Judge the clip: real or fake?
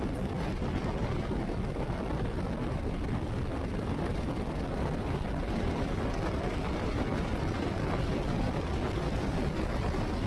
real